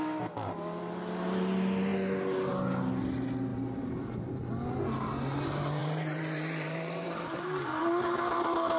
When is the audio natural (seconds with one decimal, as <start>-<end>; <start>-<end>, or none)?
0.0-3.5; 4.5-5.8